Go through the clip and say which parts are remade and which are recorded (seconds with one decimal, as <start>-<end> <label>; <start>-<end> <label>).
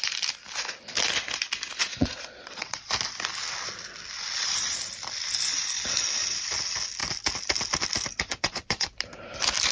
0.0-1.8 recorded; 1.8-2.9 remade; 2.9-8.3 recorded; 8.3-8.9 remade; 8.9-9.7 recorded